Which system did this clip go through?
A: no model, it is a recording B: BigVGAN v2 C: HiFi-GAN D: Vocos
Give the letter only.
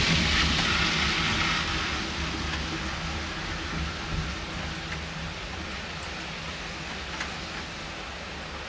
A